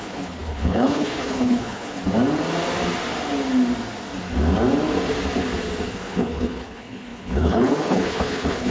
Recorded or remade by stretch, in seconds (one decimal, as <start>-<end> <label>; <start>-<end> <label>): 0.0-2.0 remade; 2.0-5.9 recorded; 5.9-8.7 remade